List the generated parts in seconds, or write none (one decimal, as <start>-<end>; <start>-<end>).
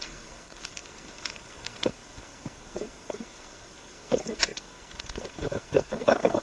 0.0-6.4